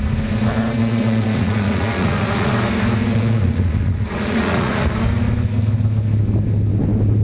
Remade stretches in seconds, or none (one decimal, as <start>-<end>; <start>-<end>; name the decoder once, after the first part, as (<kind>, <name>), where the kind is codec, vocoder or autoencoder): 0.8-2.5 (vocoder, Vocos); 3.1-4.9